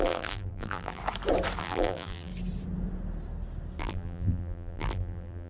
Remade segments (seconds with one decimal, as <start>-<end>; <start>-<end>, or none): 0.0-1.0; 1.6-2.3; 3.8-5.5